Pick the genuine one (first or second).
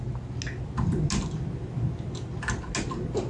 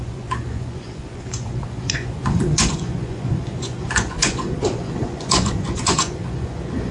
first